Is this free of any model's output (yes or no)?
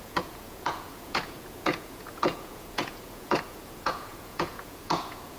no